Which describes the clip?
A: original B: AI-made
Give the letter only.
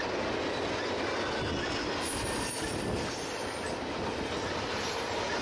A